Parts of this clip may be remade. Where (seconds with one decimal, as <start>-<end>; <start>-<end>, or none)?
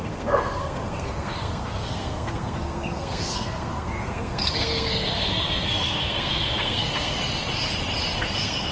0.0-7.2; 8.2-8.7